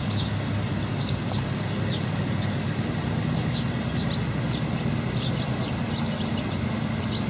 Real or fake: real